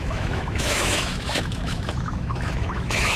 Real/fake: fake